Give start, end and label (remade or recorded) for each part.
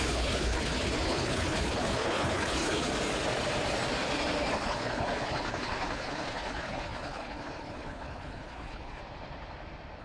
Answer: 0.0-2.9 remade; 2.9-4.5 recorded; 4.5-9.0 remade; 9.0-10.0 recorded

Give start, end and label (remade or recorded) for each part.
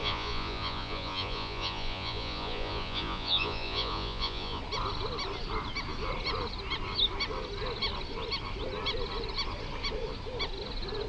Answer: 0.0-4.6 remade; 4.6-11.1 recorded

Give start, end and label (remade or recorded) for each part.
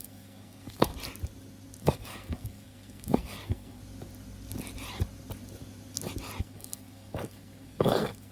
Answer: 0.0-0.9 remade; 0.9-1.8 recorded; 1.8-3.8 remade; 3.8-6.4 recorded; 6.4-8.3 remade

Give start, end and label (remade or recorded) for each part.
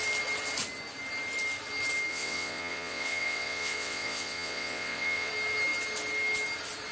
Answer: 0.0-2.1 recorded; 2.1-5.3 remade; 5.3-6.9 recorded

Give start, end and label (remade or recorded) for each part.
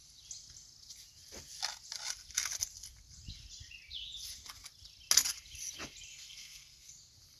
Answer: 0.0-6.1 recorded; 6.1-6.9 remade; 6.9-7.4 recorded